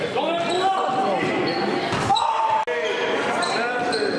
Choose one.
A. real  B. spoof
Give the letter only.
A